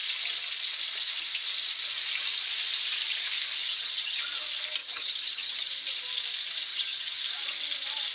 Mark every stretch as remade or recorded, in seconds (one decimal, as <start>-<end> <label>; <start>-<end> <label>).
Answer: 0.0-3.6 recorded; 3.6-4.2 remade; 4.2-4.8 recorded; 4.8-5.7 remade; 5.7-6.7 recorded; 6.7-7.2 remade; 7.2-8.1 recorded